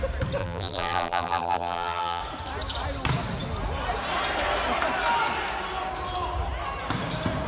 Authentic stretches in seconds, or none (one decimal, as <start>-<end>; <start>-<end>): 0.0-0.4; 2.2-7.5